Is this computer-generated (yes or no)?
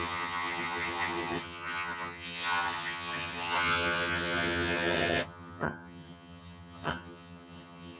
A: yes